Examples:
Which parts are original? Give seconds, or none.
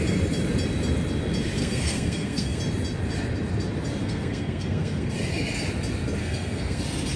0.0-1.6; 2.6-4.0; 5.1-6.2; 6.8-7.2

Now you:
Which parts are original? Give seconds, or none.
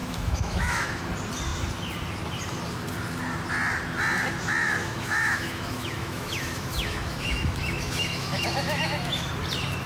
1.0-4.6; 9.3-9.9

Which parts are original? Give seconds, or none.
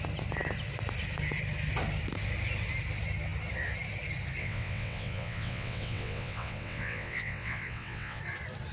0.0-4.4; 8.2-8.7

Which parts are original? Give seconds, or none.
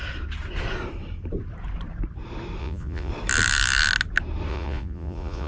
0.0-2.6; 3.1-4.5